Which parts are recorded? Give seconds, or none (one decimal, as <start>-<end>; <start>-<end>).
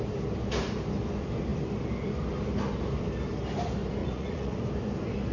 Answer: 0.0-4.0; 4.6-5.3